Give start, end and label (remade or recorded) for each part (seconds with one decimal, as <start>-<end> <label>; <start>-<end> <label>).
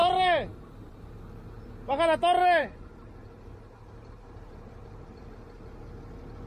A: 0.0-1.2 remade; 1.2-2.6 recorded; 2.6-5.8 remade; 5.8-6.5 recorded